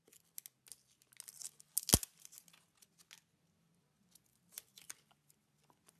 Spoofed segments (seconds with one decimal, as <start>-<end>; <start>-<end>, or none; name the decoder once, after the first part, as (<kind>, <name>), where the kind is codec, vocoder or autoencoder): none